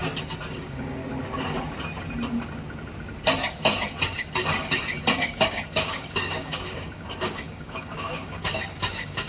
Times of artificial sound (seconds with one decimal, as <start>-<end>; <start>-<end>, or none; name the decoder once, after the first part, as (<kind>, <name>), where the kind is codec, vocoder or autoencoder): 0.5-1.0 (codec, DAC); 5.2-9.3